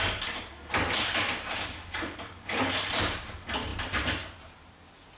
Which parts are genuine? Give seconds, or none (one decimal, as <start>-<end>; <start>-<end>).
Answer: 0.0-5.2